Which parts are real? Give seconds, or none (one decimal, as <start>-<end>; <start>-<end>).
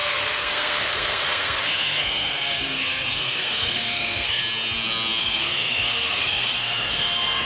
4.4-5.2